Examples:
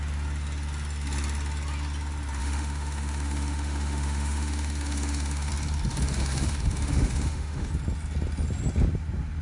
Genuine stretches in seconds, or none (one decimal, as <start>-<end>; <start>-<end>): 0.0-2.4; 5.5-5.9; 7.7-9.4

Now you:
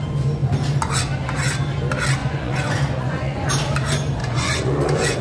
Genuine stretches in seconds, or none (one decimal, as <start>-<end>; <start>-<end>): 0.0-2.2; 3.5-4.2

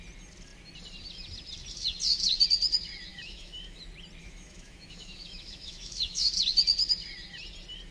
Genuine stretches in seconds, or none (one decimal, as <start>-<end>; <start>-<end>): 0.0-3.1; 3.8-4.2; 6.3-7.9

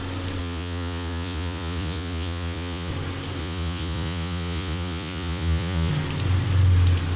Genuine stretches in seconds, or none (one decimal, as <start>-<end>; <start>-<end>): 0.0-0.4; 2.9-3.4; 5.9-7.2